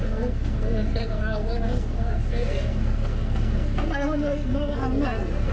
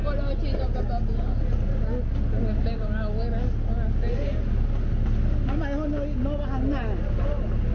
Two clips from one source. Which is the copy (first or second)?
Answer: first